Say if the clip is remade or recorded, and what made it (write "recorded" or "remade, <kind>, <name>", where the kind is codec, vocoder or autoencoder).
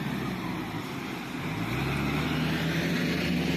recorded